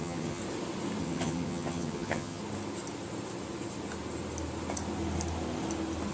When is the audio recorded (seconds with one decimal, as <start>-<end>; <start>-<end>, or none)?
0.4-1.0; 2.4-6.1